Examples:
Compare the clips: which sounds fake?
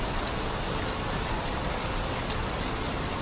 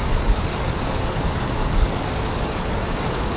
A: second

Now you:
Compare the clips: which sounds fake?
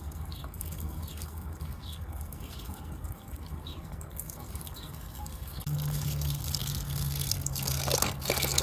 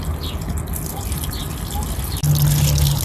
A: first